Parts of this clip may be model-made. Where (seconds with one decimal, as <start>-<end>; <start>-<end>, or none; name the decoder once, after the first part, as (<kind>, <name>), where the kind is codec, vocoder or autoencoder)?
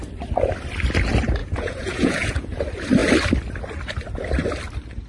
1.4-2.6 (vocoder, Vocos)